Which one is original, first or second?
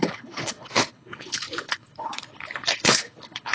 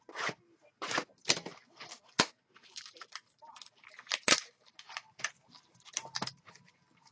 second